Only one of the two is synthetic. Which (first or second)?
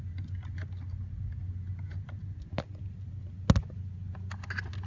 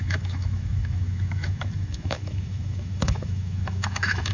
second